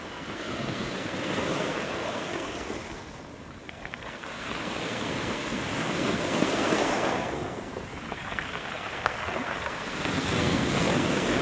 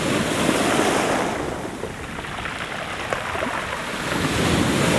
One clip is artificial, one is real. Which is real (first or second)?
second